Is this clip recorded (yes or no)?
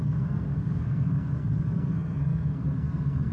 no